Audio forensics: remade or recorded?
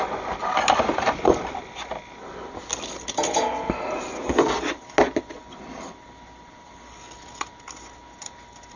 recorded